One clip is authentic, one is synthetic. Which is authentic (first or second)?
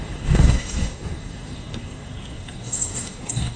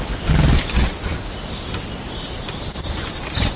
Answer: second